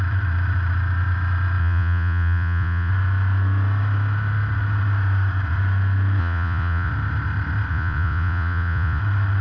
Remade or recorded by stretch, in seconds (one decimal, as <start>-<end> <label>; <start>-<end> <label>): 0.0-1.6 recorded; 1.6-2.9 remade; 2.9-6.2 recorded; 6.2-6.9 remade; 6.9-7.7 recorded; 7.7-9.0 remade; 9.0-9.4 recorded